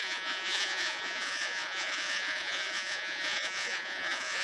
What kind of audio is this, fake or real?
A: fake